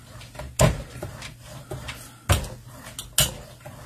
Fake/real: real